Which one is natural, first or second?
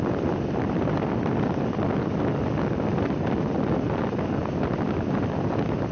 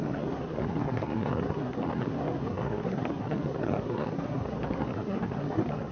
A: first